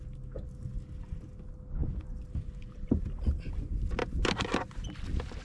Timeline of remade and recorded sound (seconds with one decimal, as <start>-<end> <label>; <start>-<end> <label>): 0.0-5.4 recorded

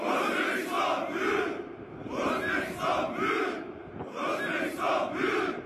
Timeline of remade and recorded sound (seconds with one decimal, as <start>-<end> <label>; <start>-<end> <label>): 0.0-5.7 remade

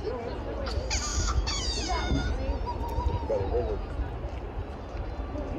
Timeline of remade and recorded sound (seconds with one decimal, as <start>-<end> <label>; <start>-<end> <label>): 0.0-1.1 recorded; 1.1-2.3 remade; 2.3-5.6 recorded

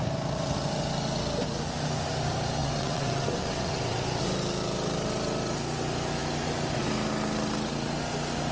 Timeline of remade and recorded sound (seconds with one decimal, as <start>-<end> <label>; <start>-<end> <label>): 0.0-2.6 recorded; 2.6-4.2 remade; 4.2-8.5 recorded